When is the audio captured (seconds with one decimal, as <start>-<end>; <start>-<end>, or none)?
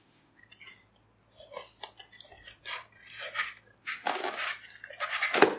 0.4-3.8; 4.2-5.6